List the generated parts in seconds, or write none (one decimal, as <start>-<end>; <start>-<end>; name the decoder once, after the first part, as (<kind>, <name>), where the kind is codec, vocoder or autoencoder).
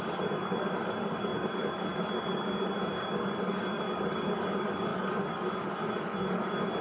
0.0-6.8 (codec, DAC)